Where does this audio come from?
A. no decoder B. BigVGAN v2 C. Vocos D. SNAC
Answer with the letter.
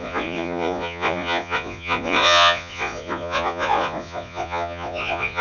C